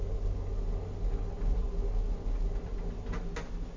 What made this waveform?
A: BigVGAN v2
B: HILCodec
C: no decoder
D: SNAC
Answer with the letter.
C